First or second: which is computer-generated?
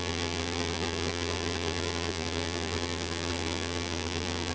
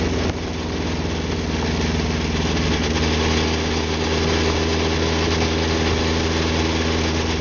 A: first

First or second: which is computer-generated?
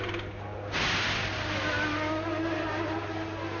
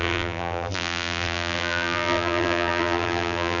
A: second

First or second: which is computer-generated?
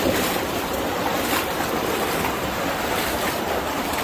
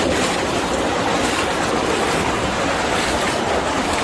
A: first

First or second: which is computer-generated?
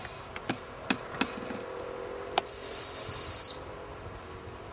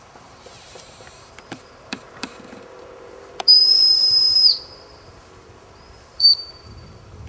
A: second